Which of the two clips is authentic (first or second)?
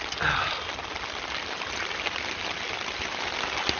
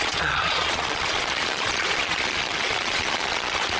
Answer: first